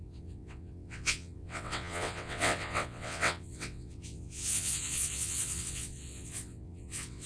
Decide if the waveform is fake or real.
fake